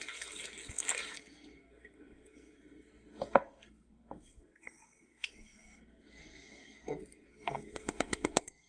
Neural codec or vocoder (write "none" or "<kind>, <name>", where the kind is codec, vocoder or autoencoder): codec, SNAC